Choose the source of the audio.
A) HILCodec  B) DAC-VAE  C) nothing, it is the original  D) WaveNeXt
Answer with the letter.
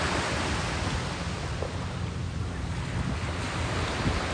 C